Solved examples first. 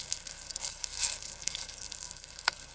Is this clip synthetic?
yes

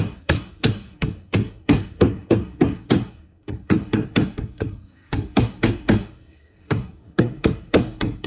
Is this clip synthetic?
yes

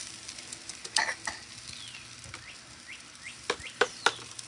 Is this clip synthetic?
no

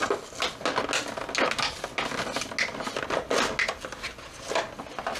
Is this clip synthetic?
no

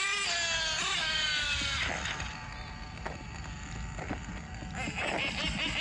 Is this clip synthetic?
no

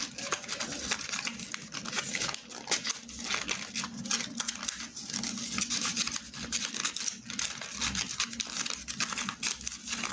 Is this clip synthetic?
no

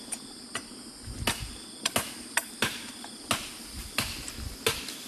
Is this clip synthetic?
no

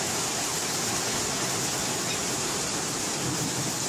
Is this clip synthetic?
no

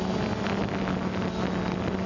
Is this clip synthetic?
no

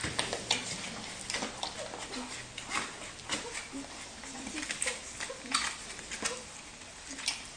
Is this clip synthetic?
no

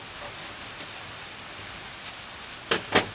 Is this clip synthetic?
no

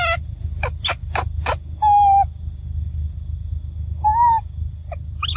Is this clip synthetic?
no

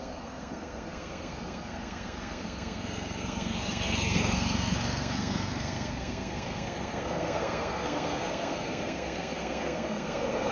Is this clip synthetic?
yes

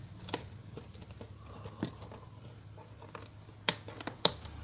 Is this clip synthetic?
no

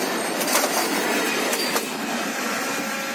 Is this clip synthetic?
no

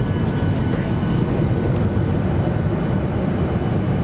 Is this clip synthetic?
no